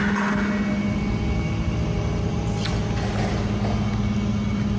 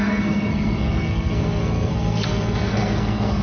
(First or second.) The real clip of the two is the first